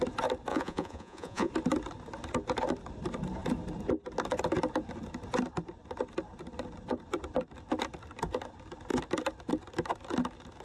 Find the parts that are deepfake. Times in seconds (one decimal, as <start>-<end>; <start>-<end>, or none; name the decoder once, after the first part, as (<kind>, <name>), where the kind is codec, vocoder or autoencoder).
0.5-1.5 (vocoder, Vocos)

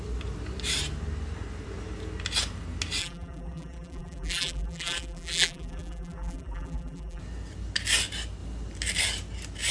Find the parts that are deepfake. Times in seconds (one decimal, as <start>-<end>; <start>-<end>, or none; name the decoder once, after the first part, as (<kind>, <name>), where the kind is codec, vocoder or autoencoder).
3.0-7.2 (vocoder, BigVGAN v2)

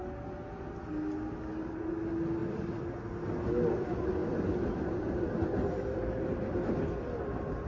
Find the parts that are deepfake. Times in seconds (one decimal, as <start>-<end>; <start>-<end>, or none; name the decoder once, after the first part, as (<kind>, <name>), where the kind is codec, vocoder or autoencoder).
2.4-2.9 (vocoder, BigVGAN v2); 4.2-6.7

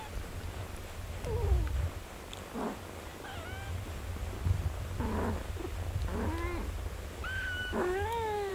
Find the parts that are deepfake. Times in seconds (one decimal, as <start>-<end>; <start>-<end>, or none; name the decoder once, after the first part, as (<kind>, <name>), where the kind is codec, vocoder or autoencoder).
7.6-8.5 (autoencoder, DAC-VAE)

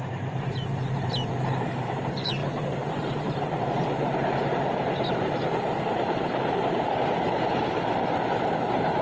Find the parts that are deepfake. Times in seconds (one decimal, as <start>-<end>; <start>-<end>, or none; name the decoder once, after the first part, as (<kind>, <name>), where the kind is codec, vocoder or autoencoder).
0.0-9.0 (vocoder, BigVGAN v2)